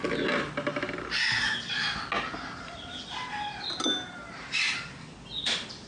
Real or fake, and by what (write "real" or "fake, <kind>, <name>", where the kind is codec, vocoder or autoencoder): real